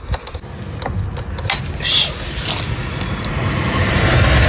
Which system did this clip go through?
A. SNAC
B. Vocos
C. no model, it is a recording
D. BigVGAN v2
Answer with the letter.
C